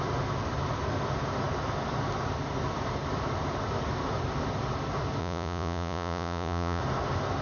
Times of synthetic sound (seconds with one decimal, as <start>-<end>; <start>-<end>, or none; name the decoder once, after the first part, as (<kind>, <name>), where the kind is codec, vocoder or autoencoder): 5.2-6.8 (vocoder, Vocos)